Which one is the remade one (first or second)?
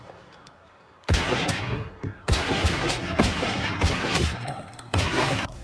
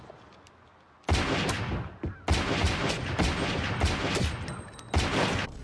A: first